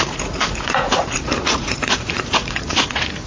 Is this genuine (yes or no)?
no